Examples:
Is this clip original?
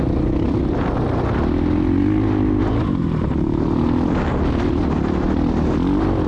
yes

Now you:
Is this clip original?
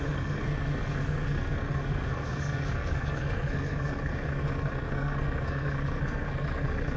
no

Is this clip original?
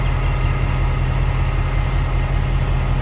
yes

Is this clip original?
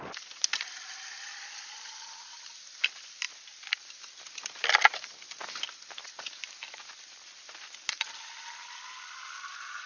yes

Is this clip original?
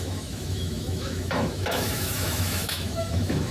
no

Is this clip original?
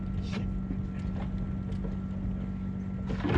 yes